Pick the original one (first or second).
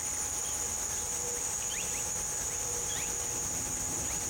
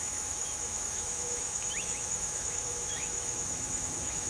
first